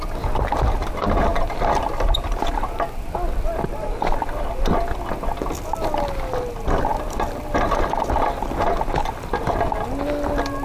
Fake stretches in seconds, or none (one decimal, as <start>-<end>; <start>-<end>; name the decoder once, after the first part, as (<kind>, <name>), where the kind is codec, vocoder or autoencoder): none